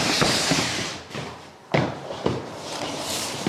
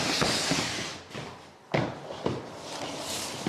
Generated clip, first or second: first